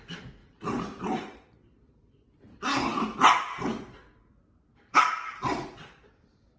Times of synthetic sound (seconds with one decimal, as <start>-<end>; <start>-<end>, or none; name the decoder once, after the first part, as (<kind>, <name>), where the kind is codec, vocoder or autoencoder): 0.4-2.1 (vocoder, BigVGAN v2); 4.7-6.6